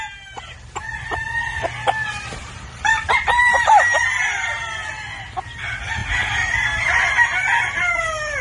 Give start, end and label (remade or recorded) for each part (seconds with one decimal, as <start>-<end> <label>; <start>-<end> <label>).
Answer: 0.0-2.4 recorded; 2.4-3.7 remade; 3.7-8.4 recorded

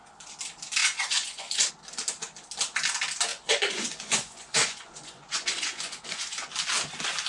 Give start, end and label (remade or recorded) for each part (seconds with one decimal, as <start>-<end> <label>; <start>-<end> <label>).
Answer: 0.0-0.8 recorded; 0.8-1.7 remade; 1.7-3.3 recorded; 3.3-6.5 remade; 6.5-7.3 recorded

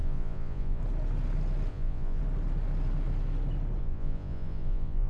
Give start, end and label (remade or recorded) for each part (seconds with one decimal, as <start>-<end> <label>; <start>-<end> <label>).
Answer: 0.0-0.8 remade; 0.8-1.7 recorded; 1.7-2.2 remade; 2.2-3.8 recorded; 3.8-5.1 remade